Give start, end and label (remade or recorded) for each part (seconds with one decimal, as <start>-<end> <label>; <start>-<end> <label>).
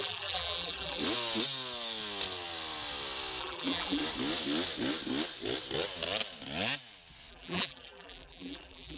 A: 0.0-1.0 remade; 1.0-3.4 recorded; 3.4-4.0 remade; 4.0-7.3 recorded; 7.3-9.0 remade